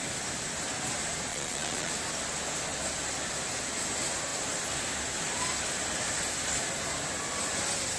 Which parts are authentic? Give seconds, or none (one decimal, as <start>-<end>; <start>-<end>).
0.0-1.3; 1.9-8.0